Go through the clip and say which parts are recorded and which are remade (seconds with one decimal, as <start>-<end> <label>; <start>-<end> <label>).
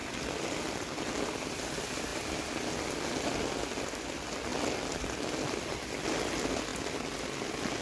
0.0-7.8 recorded